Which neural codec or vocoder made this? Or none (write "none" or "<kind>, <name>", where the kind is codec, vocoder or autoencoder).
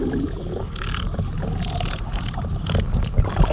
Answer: none